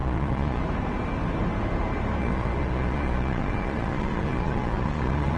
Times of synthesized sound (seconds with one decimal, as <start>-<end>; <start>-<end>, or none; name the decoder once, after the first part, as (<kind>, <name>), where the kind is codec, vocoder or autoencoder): 0.0-0.6 (vocoder, Vocos); 2.2-5.4